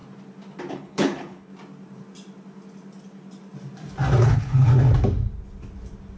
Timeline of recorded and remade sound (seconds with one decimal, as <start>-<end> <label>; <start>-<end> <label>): 0.0-0.7 recorded; 0.7-1.5 remade; 1.5-4.2 recorded; 4.2-4.7 remade; 4.7-6.2 recorded